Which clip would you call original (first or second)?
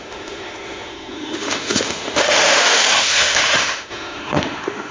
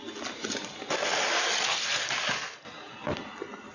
second